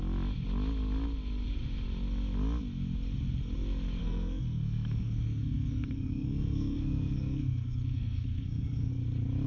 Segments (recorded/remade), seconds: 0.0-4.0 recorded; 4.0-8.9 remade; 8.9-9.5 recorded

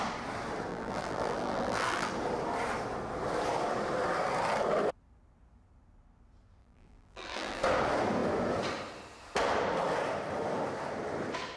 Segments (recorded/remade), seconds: 0.0-0.7 recorded; 0.7-2.1 remade; 2.1-6.6 recorded; 6.6-7.6 remade; 7.6-11.6 recorded

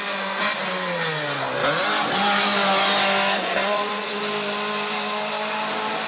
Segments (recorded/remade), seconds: 0.0-3.6 recorded; 3.6-4.2 remade; 4.2-6.1 recorded

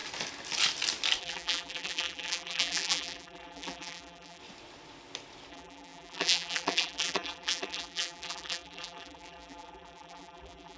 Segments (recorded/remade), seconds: 0.0-1.2 recorded; 1.2-4.4 remade; 4.4-5.5 recorded; 5.5-10.8 remade